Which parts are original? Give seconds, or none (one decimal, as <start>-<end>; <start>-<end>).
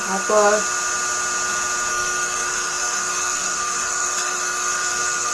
0.0-1.9